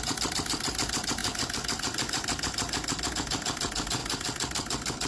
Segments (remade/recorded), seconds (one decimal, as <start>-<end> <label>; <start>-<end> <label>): 0.0-5.1 recorded